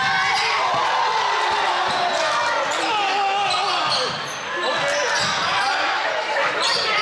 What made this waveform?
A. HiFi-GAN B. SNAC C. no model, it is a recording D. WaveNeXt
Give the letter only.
C